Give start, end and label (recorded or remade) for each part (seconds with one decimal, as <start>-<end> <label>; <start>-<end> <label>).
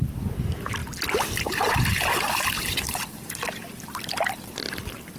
0.0-5.2 recorded